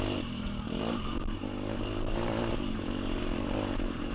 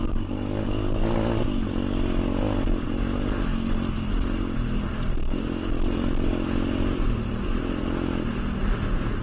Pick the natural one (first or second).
second